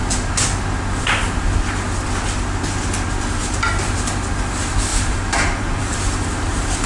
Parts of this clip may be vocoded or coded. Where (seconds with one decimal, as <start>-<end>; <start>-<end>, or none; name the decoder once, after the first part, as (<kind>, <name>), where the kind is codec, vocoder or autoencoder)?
4.9-6.9 (vocoder, BigVGAN v2)